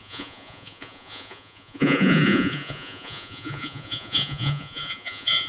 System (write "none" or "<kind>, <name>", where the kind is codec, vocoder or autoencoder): vocoder, Vocos